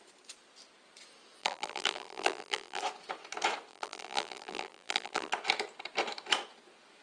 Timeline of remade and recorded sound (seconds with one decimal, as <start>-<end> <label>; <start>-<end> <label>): 0.0-1.4 recorded; 1.4-2.8 remade; 2.8-3.7 recorded; 3.7-5.3 remade; 5.3-7.0 recorded